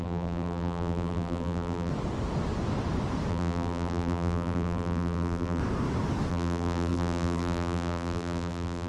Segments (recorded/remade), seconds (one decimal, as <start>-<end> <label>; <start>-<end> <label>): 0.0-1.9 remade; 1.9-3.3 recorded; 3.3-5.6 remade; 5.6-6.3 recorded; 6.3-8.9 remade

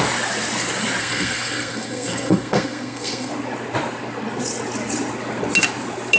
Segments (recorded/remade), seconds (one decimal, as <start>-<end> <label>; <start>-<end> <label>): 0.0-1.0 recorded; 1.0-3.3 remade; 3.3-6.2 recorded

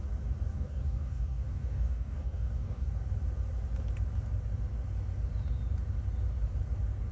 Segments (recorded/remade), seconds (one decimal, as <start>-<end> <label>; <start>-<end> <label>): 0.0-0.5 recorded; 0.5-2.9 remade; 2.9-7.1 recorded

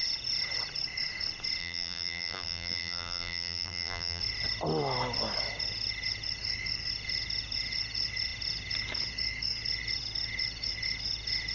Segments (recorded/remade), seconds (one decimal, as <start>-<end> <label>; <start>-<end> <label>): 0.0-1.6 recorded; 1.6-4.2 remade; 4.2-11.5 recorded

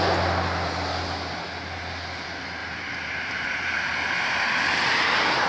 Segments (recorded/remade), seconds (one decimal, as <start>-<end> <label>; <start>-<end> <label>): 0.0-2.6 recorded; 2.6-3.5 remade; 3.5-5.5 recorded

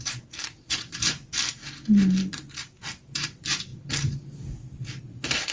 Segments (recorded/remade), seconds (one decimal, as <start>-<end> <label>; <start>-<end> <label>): 0.0-1.6 remade; 1.6-2.3 recorded; 2.3-3.7 remade; 3.7-5.1 recorded; 5.1-5.5 remade

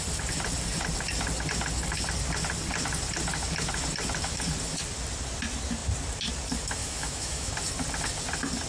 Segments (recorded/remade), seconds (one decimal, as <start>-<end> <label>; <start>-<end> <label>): 0.0-6.8 recorded; 6.8-7.5 remade; 7.5-8.7 recorded

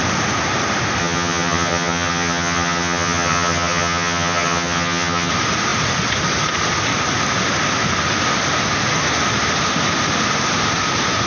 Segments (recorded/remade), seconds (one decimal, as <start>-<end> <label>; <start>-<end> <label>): 0.0-1.0 recorded; 1.0-5.3 remade; 5.3-11.3 recorded